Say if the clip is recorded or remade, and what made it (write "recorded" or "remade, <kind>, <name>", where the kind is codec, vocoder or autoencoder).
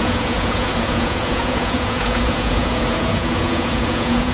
remade, vocoder, Vocos